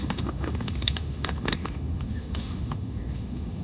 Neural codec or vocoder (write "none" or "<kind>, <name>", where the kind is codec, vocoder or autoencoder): autoencoder, DAC-VAE